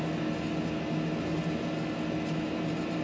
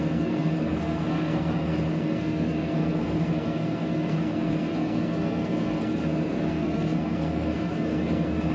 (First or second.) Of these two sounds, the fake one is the second